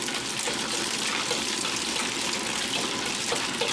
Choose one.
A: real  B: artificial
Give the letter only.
A